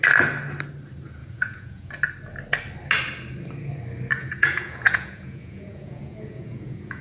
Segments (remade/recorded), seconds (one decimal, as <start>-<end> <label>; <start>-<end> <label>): 0.0-1.2 recorded; 1.2-1.9 remade; 1.9-4.2 recorded; 4.2-7.0 remade